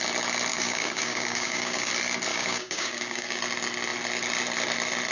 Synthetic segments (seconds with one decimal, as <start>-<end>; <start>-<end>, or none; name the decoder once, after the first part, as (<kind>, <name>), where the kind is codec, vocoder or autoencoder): 0.5-1.9 (codec, DAC); 2.3-3.4